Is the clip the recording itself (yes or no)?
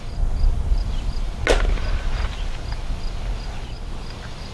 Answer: yes